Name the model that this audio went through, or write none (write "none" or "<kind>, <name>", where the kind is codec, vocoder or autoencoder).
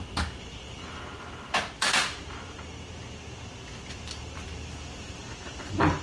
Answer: vocoder, BigVGAN v2